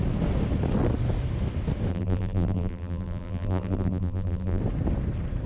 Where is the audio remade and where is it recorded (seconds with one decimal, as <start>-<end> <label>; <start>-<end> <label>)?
0.0-1.9 recorded; 1.9-4.6 remade; 4.6-5.5 recorded